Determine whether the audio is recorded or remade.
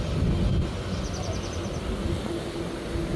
recorded